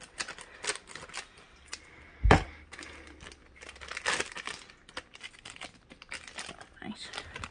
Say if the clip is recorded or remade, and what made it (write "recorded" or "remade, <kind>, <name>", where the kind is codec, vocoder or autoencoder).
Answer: recorded